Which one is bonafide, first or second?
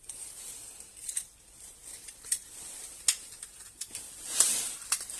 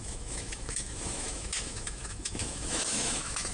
first